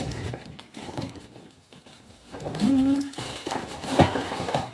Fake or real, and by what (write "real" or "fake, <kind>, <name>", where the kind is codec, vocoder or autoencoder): fake, codec, SNAC